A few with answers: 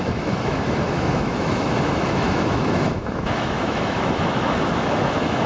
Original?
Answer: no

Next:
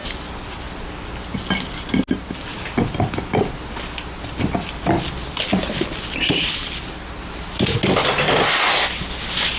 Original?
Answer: yes